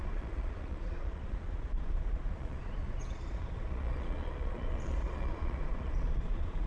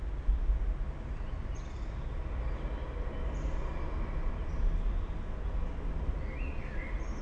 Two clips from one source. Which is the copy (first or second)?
first